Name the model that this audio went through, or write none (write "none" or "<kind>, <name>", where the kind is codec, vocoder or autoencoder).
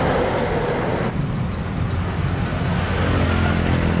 none